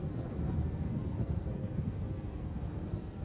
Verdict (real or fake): fake